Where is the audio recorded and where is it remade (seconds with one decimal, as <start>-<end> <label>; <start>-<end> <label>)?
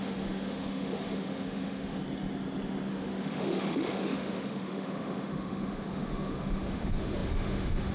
0.0-2.0 remade; 2.0-2.9 recorded; 2.9-7.9 remade